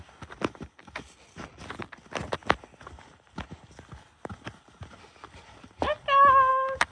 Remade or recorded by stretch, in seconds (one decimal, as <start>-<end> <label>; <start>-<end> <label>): 0.0-6.9 recorded